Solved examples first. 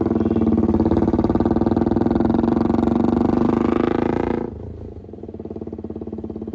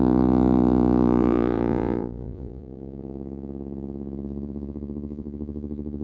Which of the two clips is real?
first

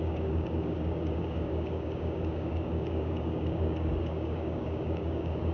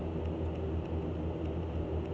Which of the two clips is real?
second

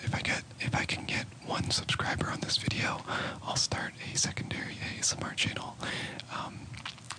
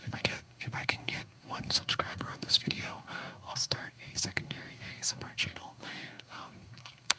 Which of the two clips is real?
first